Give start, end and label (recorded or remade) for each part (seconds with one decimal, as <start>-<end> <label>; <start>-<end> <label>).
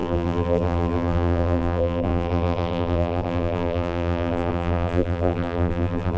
0.0-6.2 remade